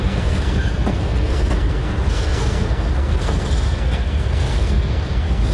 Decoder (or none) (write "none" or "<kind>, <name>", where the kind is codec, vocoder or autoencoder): codec, SNAC